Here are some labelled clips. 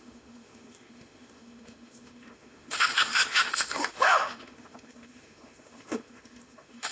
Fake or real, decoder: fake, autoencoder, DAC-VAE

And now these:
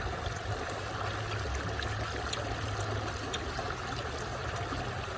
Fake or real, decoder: real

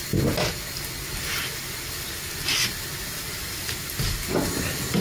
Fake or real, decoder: real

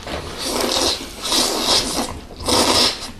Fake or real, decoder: real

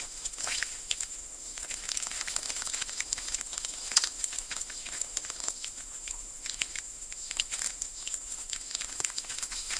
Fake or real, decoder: fake, autoencoder, DAC-VAE